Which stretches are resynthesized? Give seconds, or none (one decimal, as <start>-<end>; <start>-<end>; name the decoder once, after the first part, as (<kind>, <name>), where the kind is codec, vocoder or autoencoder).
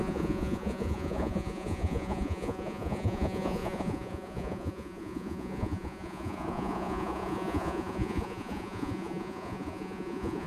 0.0-10.5 (vocoder, Vocos)